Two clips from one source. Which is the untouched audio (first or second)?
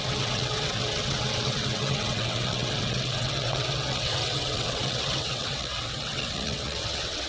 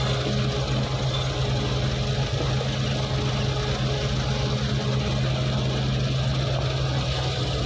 second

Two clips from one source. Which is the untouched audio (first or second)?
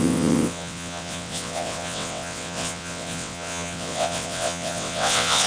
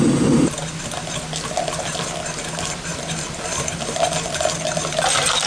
second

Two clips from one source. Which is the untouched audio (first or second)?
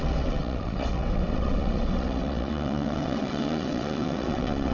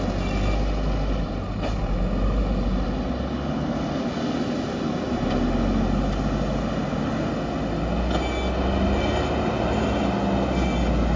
second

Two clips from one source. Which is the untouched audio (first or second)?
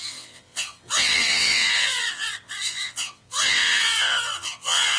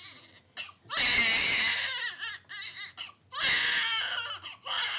second